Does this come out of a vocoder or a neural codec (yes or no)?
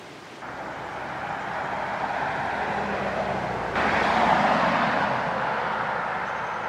no